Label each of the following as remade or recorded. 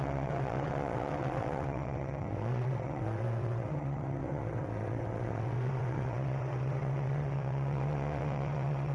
remade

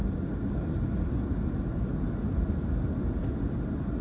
recorded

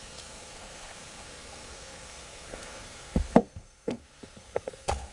remade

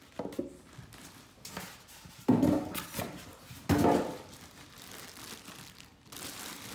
recorded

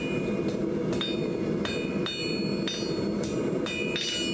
recorded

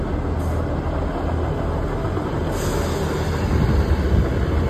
recorded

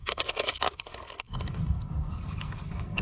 remade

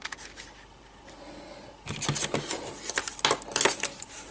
recorded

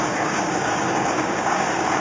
remade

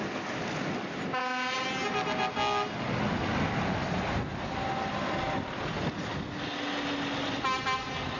recorded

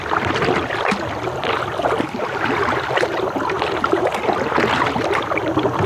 recorded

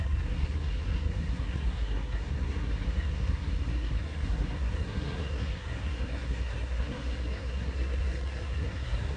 remade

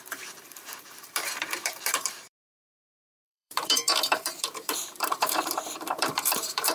remade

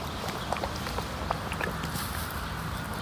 recorded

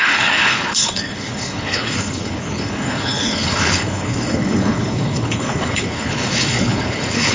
remade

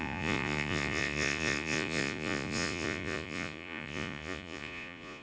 remade